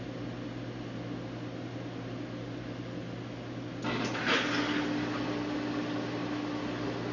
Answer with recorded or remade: recorded